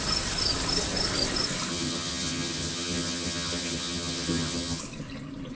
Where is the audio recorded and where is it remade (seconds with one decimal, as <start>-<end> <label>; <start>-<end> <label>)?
0.0-1.7 recorded; 1.7-4.8 remade; 4.8-5.5 recorded